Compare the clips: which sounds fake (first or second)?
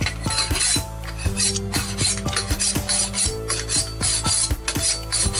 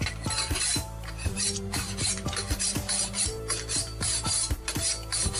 second